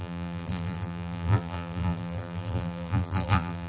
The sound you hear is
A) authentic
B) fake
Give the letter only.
B